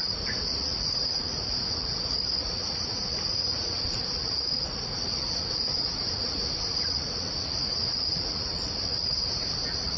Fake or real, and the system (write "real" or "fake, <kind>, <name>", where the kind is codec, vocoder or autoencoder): fake, vocoder, Vocos